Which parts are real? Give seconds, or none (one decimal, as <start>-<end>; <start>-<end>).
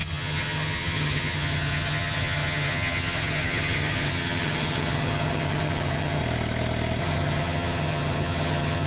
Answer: 6.2-7.0